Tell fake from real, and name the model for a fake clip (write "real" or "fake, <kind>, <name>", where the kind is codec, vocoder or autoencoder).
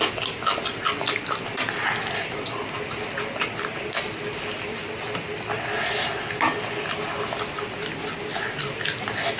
real